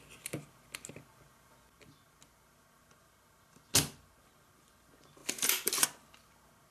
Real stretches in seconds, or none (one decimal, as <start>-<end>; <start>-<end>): 0.0-6.7